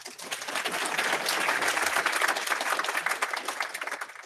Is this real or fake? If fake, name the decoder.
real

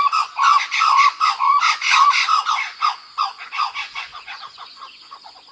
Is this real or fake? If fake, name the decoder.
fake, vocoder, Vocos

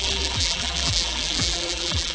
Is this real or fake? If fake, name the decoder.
fake, vocoder, BigVGAN v2